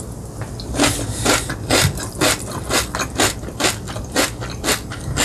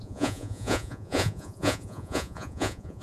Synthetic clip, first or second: second